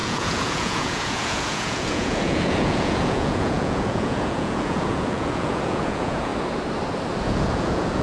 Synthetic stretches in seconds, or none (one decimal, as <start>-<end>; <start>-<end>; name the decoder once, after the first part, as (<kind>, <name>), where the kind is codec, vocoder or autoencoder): 0.0-6.3 (vocoder, Vocos); 7.2-8.0